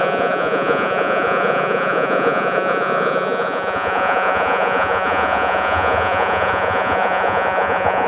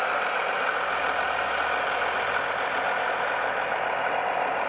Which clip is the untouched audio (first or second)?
second